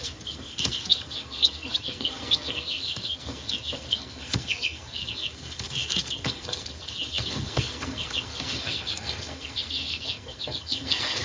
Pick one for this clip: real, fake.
fake